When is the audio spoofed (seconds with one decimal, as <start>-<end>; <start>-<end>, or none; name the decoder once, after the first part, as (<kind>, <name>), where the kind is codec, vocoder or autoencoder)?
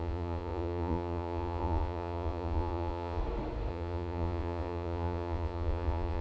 0.0-3.2 (vocoder, Vocos); 3.7-6.2